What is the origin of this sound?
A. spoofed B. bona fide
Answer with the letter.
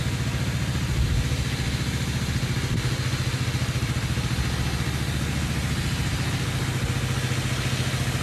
B